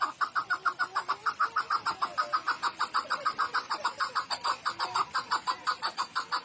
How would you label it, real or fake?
real